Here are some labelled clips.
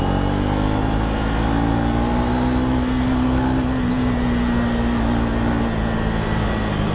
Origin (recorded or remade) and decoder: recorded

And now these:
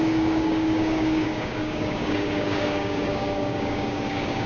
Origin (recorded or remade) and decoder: remade, codec, DAC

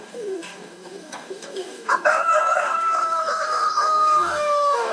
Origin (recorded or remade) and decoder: remade, codec, DAC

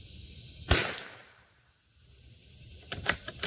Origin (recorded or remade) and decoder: recorded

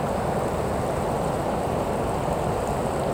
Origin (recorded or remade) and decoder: recorded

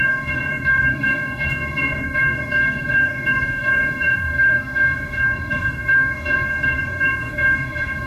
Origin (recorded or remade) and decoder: remade, codec, DAC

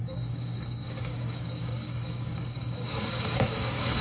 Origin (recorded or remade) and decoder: remade, codec, DAC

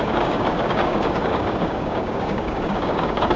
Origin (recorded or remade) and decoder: remade, codec, DAC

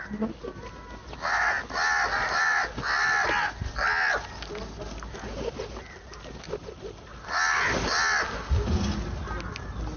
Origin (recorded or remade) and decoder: recorded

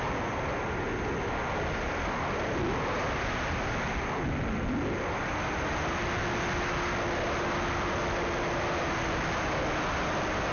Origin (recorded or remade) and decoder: recorded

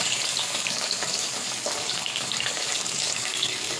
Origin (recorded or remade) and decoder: remade, codec, DAC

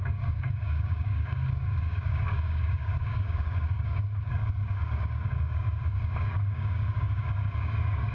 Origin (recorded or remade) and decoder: remade, codec, DAC